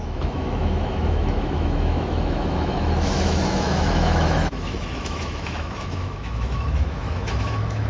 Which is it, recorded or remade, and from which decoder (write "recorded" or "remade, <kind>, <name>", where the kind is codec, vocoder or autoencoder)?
remade, autoencoder, DAC-VAE